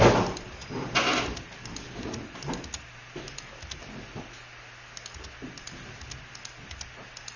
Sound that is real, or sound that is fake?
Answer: real